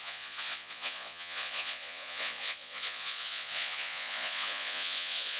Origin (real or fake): fake